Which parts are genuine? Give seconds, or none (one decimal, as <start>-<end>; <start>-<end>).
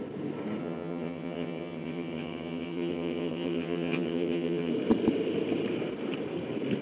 0.0-0.6; 4.7-6.8